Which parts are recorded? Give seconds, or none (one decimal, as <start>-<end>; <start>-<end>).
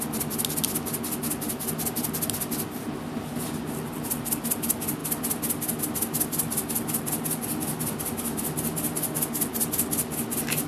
0.0-10.7